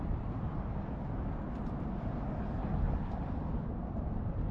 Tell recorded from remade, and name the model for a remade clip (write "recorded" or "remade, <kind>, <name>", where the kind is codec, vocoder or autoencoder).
recorded